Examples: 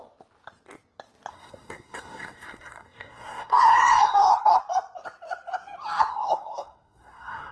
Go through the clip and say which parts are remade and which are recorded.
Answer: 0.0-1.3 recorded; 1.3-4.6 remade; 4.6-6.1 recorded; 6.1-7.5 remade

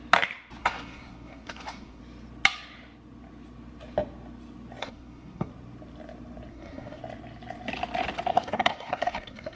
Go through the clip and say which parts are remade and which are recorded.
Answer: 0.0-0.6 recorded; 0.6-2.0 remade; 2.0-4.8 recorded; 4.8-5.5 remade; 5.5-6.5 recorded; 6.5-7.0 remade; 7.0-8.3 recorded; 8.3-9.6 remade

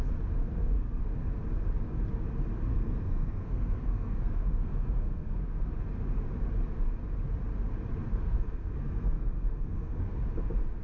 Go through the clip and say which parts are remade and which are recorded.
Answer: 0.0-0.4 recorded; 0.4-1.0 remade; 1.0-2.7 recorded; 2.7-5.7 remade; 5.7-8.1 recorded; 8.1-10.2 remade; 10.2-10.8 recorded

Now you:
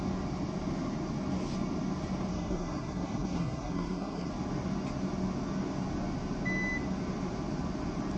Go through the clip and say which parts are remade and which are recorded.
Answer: 0.0-2.3 recorded; 2.3-4.3 remade; 4.3-8.2 recorded

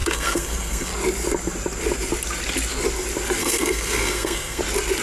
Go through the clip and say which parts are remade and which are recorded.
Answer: 0.0-0.9 remade; 0.9-3.4 recorded; 3.4-4.6 remade; 4.6-5.0 recorded